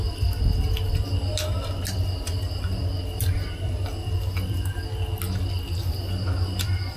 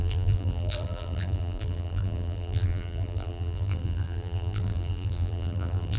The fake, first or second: second